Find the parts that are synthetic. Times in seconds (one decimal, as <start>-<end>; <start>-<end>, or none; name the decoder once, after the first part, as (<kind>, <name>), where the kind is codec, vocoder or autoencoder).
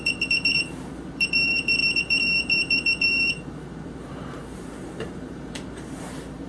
0.0-6.5 (vocoder, BigVGAN v2)